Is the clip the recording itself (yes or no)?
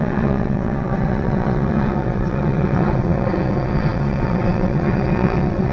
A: no